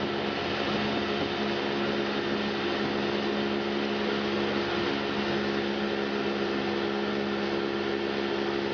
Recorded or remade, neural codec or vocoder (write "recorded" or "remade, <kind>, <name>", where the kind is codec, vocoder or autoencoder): recorded